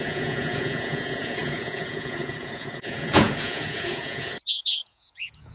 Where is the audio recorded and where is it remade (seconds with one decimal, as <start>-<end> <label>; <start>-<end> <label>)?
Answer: 0.0-5.5 remade